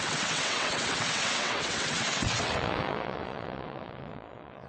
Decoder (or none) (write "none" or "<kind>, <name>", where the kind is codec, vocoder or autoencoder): vocoder, WaveNeXt